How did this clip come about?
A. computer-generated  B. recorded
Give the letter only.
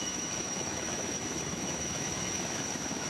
A